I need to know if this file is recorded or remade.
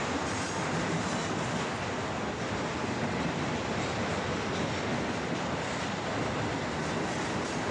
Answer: recorded